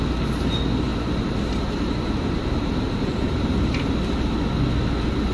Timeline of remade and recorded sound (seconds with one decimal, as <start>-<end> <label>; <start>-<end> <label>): 0.0-0.9 recorded; 0.9-3.9 remade; 3.9-5.3 recorded